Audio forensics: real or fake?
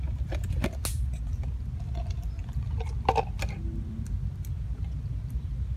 real